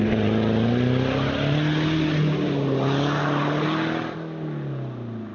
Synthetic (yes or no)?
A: no